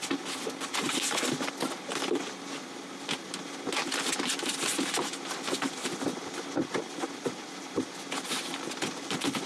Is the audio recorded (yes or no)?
yes